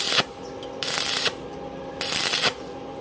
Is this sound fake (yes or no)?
yes